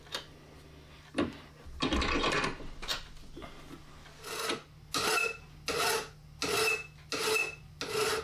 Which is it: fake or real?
real